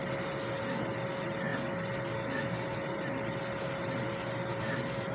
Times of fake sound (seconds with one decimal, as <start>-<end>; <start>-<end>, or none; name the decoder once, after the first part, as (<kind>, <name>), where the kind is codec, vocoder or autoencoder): none